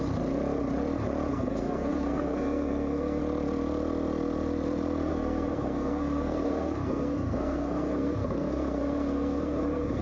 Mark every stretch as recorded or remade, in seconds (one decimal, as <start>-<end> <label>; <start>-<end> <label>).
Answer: 0.0-1.3 recorded; 1.3-3.2 remade; 3.2-5.1 recorded; 5.1-10.0 remade